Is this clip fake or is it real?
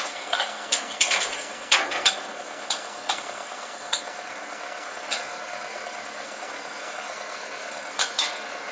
fake